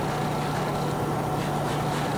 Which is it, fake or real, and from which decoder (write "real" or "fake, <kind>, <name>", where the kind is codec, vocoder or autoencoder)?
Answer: real